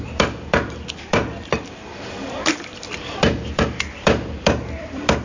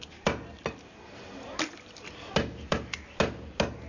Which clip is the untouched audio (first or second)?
second